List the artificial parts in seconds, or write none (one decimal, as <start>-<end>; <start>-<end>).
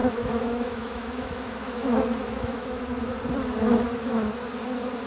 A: 0.0-3.1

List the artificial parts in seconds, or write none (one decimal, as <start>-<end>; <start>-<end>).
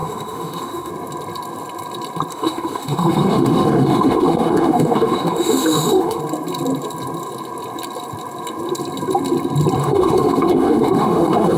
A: 0.0-0.9; 2.3-6.2; 9.8-11.6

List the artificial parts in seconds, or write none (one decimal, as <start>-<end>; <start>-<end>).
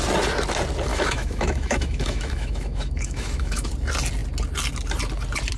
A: 0.9-3.7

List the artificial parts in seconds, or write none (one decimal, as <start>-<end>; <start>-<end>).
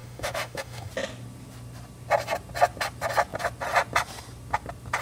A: 0.0-0.9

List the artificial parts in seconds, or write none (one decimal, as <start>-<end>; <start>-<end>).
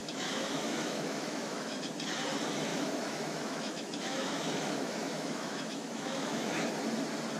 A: 0.0-1.9; 2.7-6.7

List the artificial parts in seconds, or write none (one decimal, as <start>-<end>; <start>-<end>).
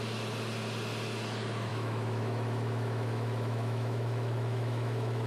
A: 1.7-5.3